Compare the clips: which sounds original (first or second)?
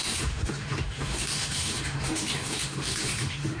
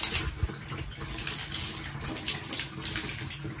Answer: second